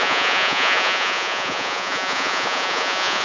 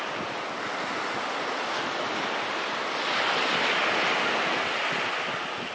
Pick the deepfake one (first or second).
first